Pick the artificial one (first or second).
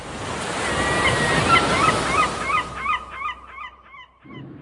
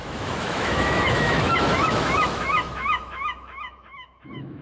second